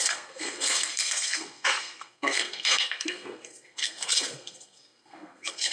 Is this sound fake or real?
fake